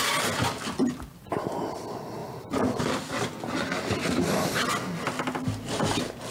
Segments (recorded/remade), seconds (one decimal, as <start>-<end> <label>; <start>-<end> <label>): 0.0-2.2 recorded; 2.2-2.8 remade; 2.8-6.3 recorded